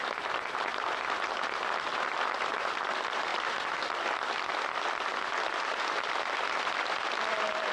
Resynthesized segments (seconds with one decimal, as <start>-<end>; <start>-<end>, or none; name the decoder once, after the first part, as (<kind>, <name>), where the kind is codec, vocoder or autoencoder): none